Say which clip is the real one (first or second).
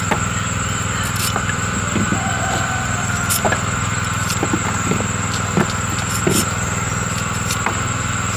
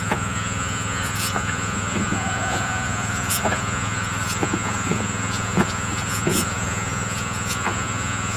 first